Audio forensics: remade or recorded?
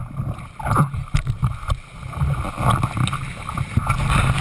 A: recorded